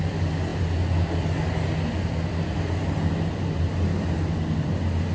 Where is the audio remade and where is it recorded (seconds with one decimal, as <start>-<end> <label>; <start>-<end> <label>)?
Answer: 0.0-5.1 recorded